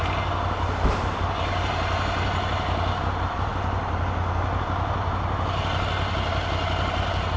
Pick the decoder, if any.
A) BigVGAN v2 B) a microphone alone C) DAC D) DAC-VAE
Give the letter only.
B